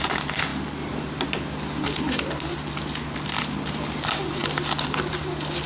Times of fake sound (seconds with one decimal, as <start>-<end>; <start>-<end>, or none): none